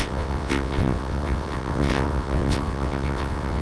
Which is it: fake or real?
fake